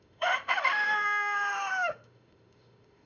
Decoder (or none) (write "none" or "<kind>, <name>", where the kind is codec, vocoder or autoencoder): autoencoder, DAC-VAE